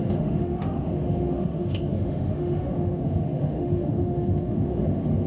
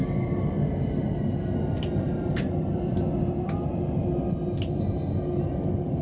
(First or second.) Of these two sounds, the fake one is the first